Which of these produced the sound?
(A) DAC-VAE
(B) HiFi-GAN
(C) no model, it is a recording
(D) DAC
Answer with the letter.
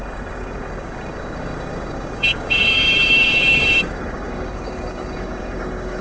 D